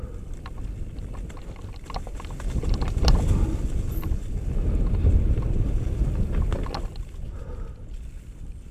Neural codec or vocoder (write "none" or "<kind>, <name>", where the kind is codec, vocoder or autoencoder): none